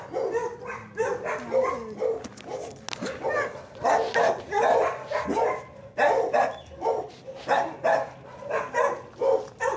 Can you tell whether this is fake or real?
real